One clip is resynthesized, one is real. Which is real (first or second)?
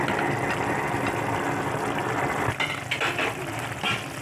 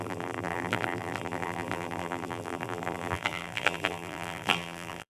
first